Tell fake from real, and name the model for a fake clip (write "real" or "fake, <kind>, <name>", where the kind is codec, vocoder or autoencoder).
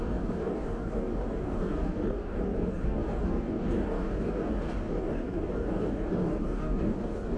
fake, codec, DAC